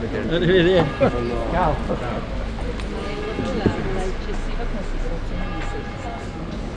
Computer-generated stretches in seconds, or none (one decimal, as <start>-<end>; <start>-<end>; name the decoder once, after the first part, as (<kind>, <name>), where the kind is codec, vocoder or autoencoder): none